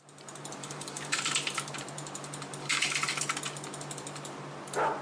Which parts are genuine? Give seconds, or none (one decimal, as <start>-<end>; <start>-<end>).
0.0-0.6; 1.3-2.6; 3.2-5.0